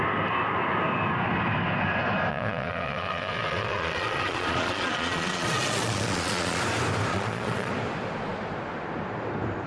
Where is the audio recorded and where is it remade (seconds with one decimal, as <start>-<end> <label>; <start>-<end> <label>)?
0.0-2.3 recorded; 2.3-6.6 remade; 6.6-7.1 recorded; 7.1-7.7 remade; 7.7-9.7 recorded